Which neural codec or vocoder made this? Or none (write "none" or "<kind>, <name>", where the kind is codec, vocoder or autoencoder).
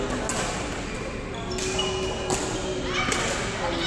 none